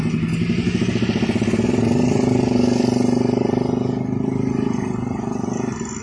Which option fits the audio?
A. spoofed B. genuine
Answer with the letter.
B